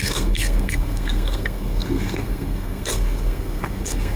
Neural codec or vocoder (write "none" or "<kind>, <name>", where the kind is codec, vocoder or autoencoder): codec, SNAC